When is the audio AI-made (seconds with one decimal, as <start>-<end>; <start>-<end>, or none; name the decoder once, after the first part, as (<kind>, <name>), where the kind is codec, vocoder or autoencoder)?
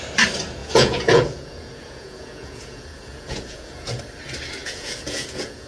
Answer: 0.6-4.0 (vocoder, Vocos); 4.6-5.7